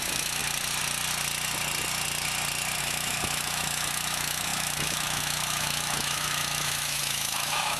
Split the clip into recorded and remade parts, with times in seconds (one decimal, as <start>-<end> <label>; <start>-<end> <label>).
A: 0.0-0.4 remade; 0.4-2.8 recorded; 2.8-7.8 remade